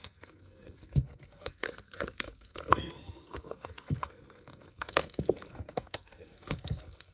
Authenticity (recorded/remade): remade